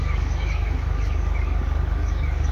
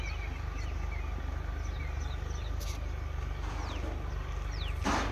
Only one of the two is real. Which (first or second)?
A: second